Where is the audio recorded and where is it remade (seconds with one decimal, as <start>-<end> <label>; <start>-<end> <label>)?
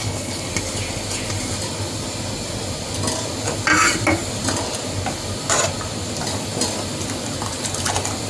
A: 0.0-0.5 remade; 0.5-8.3 recorded